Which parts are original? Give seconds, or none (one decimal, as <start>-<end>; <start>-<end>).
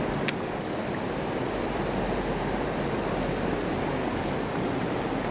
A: 0.8-4.0; 4.6-5.3